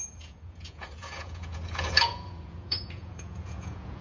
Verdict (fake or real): fake